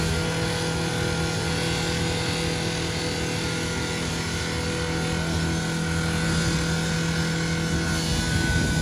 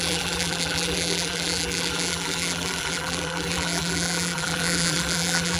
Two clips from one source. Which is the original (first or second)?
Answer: first